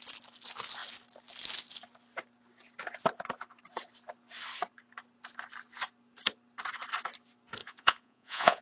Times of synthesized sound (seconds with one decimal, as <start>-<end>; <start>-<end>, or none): 7.6-8.6